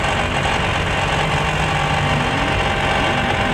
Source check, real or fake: real